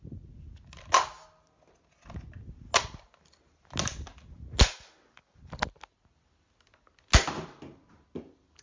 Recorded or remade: recorded